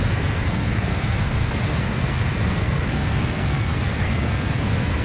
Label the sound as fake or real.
fake